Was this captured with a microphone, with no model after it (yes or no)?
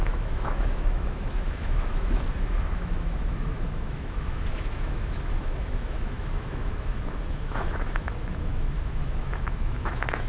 no